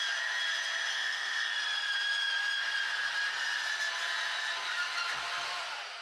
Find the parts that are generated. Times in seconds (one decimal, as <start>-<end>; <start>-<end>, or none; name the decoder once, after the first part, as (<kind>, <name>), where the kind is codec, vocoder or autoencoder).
0.9-1.5 (codec, SNAC)